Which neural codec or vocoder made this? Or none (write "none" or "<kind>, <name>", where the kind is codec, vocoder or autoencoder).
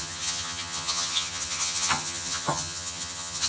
vocoder, HiFi-GAN